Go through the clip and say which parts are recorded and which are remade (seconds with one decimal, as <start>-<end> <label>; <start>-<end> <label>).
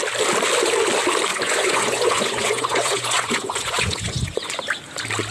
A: 0.0-1.3 recorded; 1.3-4.5 remade; 4.5-5.3 recorded